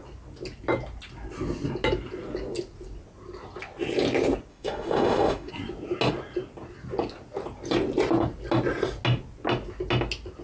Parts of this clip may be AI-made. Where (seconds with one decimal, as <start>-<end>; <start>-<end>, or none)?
4.5-5.5